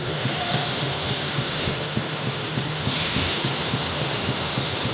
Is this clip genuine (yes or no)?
no